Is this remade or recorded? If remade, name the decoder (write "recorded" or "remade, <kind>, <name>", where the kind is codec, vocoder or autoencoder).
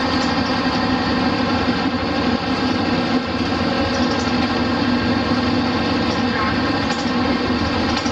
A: recorded